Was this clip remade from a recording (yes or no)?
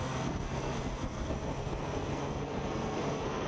yes